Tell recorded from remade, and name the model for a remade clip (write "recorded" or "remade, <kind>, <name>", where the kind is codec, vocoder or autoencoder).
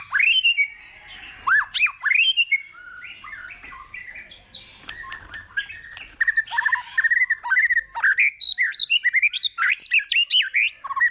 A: recorded